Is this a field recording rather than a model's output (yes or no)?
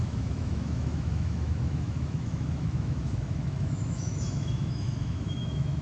no